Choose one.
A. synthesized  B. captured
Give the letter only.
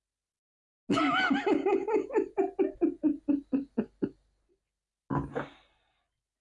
B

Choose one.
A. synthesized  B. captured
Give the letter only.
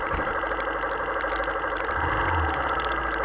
B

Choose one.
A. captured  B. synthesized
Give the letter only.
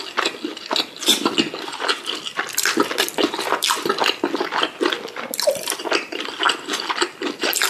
A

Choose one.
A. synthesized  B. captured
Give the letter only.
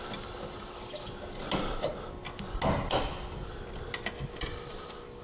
B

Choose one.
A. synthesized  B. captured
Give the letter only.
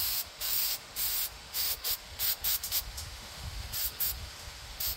A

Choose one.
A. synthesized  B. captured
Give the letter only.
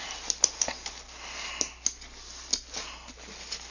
B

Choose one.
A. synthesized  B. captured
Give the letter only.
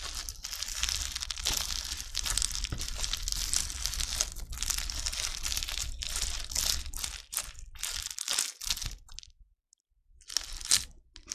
B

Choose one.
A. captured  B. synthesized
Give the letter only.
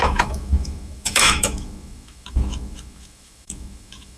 B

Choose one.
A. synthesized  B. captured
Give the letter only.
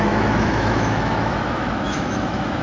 A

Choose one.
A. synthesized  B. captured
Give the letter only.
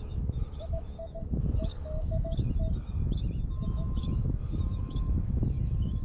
A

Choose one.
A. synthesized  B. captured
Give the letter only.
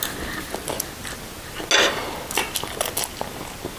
B